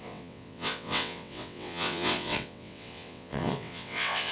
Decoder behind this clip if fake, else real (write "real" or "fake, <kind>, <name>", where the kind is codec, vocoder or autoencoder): fake, vocoder, WaveNeXt